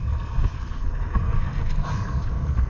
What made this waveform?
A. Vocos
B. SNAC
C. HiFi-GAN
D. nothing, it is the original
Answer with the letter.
B